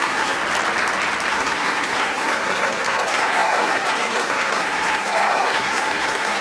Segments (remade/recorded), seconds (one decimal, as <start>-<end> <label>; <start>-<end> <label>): 0.0-0.4 remade; 0.4-1.3 recorded; 1.3-6.4 remade